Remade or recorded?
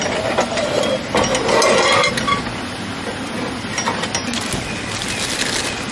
recorded